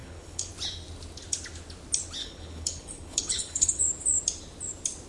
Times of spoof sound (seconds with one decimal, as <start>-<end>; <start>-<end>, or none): 0.0-0.5; 2.2-3.8